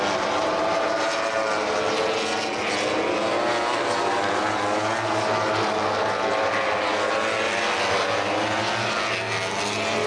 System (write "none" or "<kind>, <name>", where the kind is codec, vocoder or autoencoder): none